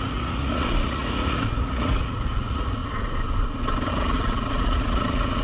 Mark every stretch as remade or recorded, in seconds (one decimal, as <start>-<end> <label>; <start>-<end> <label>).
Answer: 0.0-2.8 remade; 2.8-3.9 recorded; 3.9-5.4 remade